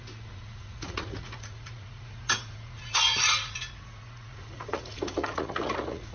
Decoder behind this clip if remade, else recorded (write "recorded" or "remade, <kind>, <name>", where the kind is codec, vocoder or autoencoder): remade, vocoder, Vocos